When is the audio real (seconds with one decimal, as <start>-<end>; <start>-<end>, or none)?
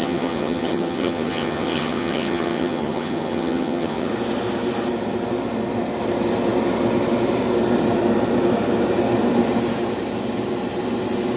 4.1-11.4